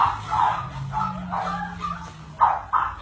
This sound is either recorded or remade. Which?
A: recorded